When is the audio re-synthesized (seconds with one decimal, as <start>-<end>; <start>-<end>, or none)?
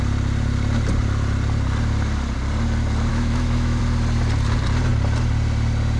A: 3.1-3.8